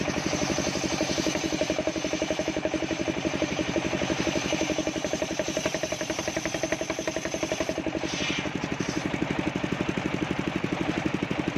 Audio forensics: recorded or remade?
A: remade